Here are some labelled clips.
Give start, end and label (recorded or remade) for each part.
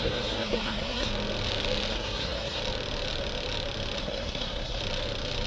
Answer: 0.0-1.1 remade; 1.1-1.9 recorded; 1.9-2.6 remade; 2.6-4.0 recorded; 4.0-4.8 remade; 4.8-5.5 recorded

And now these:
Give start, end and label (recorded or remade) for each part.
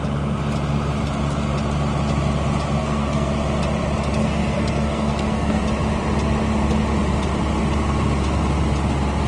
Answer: 0.0-2.8 recorded; 2.8-3.3 remade; 3.3-4.2 recorded; 4.2-5.6 remade; 5.6-9.3 recorded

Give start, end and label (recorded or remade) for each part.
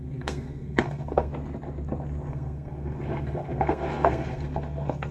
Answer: 0.0-1.3 remade; 1.3-2.3 recorded; 2.3-5.1 remade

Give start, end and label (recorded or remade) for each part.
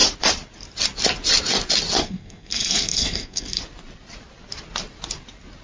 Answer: 0.0-2.0 recorded; 2.0-3.6 remade; 3.6-5.6 recorded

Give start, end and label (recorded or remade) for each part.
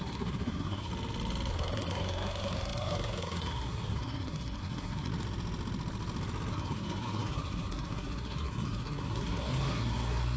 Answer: 0.0-0.9 remade; 0.9-1.5 recorded; 1.5-5.1 remade; 5.1-6.5 recorded; 6.5-10.4 remade